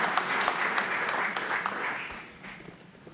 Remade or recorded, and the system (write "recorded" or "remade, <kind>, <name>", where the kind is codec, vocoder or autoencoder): recorded